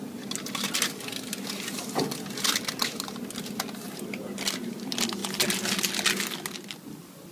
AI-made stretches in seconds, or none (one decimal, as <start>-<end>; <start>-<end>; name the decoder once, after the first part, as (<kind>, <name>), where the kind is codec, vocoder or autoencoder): none